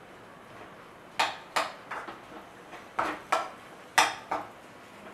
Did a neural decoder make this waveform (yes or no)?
no